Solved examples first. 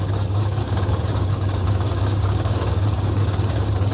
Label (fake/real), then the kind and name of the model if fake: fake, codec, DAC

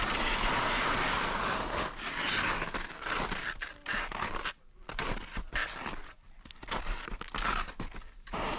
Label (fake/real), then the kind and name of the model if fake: real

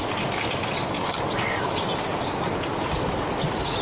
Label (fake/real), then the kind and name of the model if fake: real